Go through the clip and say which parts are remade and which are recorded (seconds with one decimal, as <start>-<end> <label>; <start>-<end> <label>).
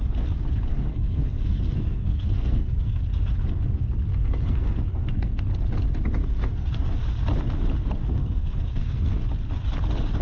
0.0-0.7 recorded; 0.7-3.0 remade; 3.0-4.1 recorded; 4.1-5.4 remade; 5.4-6.2 recorded; 6.2-6.9 remade; 6.9-8.2 recorded; 8.2-9.2 remade; 9.2-10.2 recorded